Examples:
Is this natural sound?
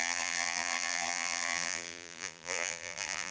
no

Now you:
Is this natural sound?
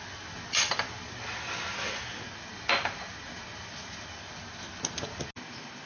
yes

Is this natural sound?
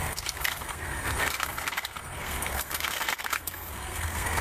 no